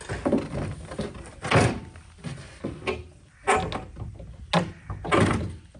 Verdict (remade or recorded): recorded